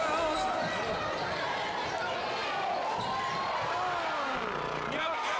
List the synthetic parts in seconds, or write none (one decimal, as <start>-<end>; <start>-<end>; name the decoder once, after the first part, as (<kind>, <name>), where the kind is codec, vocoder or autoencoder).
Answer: none